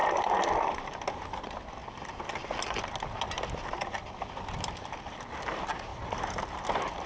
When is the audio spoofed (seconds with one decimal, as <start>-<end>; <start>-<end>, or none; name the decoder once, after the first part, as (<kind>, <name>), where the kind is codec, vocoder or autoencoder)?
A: 5.9-6.6 (vocoder, BigVGAN v2)